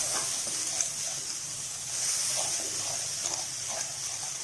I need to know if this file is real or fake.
real